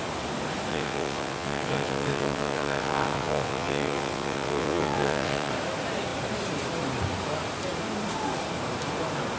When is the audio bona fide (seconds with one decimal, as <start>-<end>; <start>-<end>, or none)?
0.0-0.7; 5.5-9.4